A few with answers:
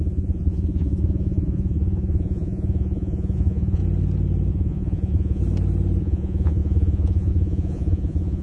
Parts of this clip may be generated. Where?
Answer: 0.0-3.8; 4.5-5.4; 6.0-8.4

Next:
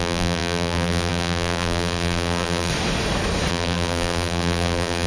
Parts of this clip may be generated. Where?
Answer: 0.0-2.7; 3.5-5.1

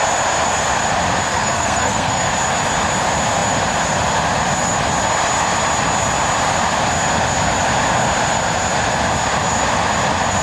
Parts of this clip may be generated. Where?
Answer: 1.3-2.3

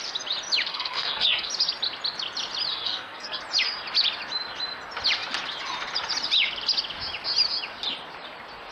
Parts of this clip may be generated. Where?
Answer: 0.7-1.5; 2.7-3.4

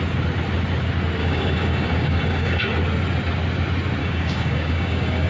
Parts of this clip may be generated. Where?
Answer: 1.2-2.6; 4.0-5.3